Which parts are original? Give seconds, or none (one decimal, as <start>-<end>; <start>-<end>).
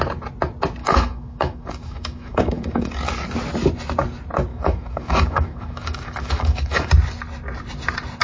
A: 0.0-0.8; 2.9-4.5; 6.9-8.2